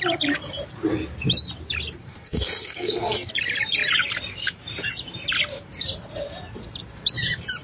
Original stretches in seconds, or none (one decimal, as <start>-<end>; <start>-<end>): 0.0-2.0; 3.3-7.6